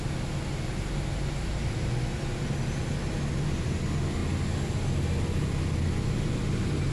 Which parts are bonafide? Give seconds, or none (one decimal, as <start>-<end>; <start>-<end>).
0.0-6.9